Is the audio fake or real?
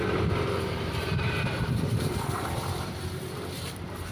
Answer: fake